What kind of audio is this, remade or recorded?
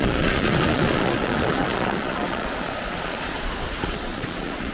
remade